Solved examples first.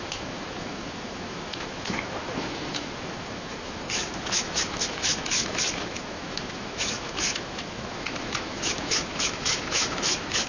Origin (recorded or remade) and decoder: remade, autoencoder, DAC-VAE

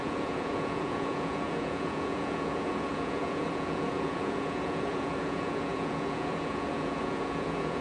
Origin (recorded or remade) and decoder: remade, vocoder, Vocos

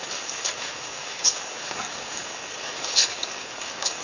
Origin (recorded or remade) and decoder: remade, codec, DAC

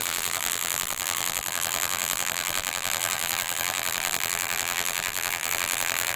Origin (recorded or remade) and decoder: remade, vocoder, BigVGAN v2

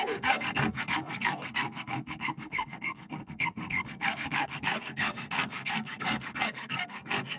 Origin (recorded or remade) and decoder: remade, codec, SNAC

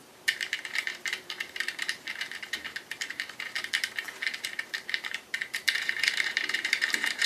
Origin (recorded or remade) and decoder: remade, vocoder, BigVGAN v2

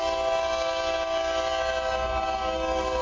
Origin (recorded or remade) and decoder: recorded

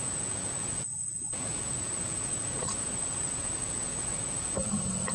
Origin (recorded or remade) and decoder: remade, vocoder, Vocos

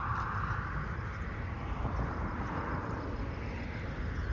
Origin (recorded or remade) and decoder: recorded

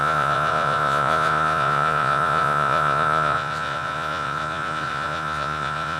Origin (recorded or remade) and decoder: remade, vocoder, Vocos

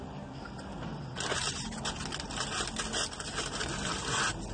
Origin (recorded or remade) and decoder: recorded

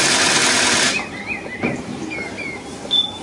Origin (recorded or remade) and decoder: recorded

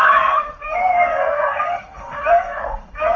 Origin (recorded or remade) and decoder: remade, codec, SNAC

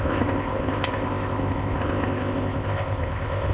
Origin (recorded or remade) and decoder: remade, codec, ZipCodec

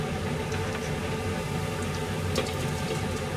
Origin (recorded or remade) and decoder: recorded